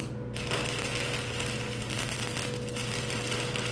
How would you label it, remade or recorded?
recorded